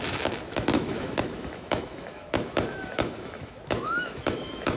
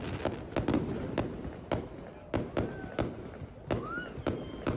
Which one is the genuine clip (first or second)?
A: second